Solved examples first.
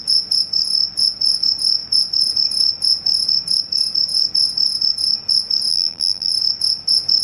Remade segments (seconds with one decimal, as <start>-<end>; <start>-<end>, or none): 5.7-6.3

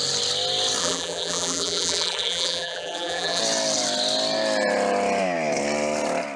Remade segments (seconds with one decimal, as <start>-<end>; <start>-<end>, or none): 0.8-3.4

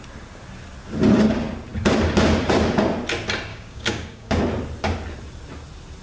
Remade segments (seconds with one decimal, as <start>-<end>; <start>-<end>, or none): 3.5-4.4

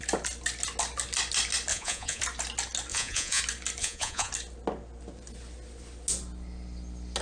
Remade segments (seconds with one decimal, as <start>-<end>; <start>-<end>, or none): 1.7-2.2; 2.9-3.4; 3.8-4.3

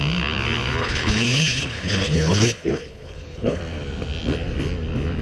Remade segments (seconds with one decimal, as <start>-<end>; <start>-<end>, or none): 0.8-3.6

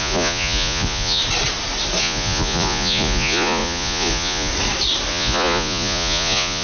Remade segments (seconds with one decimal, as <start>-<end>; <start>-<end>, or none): 0.0-1.2; 2.0-4.5; 5.1-6.6

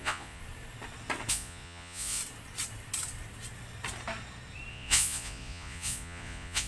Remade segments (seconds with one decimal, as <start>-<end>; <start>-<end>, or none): 0.0-0.4; 1.3-2.2; 4.7-6.7